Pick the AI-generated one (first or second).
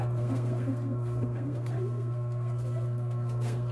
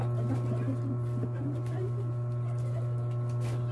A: first